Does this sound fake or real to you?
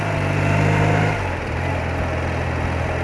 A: real